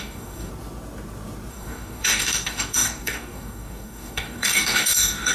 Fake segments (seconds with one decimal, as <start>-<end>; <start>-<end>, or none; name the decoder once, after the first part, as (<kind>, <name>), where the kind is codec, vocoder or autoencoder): 0.0-0.5 (codec, DAC); 1.5-5.3